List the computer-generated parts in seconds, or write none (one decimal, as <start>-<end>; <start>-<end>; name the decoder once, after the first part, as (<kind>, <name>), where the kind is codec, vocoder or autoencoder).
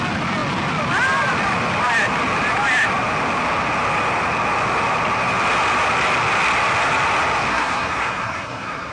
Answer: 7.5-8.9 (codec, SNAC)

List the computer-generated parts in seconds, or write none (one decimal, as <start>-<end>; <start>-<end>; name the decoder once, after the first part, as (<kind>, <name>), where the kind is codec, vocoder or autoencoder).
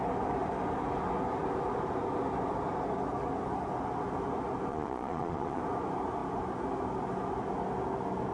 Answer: 4.7-5.6 (vocoder, Vocos)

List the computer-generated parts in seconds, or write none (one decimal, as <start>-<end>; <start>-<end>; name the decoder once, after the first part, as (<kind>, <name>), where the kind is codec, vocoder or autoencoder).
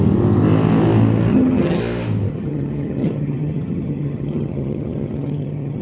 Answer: 1.3-1.8 (vocoder, HiFi-GAN); 2.3-5.8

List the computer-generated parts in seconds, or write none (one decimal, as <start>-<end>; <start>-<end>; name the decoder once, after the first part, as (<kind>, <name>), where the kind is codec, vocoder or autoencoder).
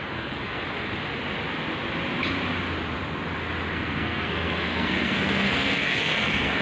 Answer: 0.0-0.6 (codec, SNAC); 3.7-6.6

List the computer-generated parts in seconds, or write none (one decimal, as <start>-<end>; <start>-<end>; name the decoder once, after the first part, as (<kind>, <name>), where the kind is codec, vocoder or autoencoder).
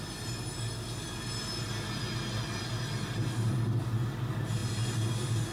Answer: none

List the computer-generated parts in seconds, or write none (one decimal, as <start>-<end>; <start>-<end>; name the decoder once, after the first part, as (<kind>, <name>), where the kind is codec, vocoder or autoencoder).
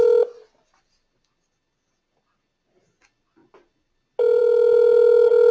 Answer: none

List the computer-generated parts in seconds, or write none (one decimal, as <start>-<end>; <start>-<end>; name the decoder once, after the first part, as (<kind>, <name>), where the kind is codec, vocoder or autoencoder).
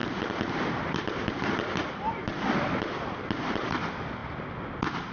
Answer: 0.0-4.2 (vocoder, BigVGAN v2)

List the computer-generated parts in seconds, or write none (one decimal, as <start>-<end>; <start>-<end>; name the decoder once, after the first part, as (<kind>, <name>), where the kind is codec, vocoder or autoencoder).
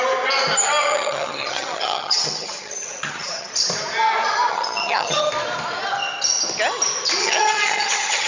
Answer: 0.9-3.5 (vocoder, HiFi-GAN); 4.5-5.3; 7.2-8.3